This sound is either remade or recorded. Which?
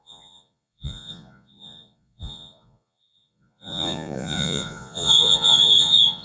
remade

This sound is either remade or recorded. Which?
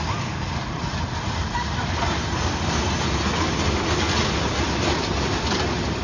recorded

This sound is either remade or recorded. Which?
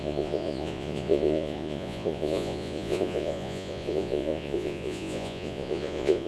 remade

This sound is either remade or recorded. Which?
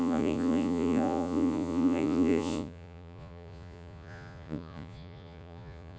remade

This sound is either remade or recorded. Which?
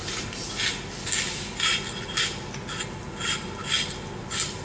recorded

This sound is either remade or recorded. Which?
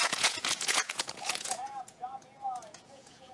remade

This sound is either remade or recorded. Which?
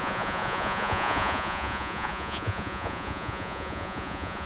remade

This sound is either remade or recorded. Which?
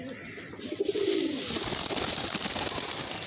recorded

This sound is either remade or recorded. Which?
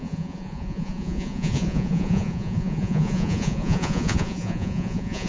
remade